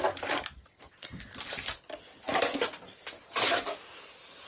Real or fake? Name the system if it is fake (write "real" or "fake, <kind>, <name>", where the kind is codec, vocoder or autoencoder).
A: real